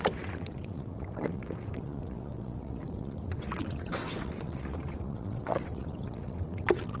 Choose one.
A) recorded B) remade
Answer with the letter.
B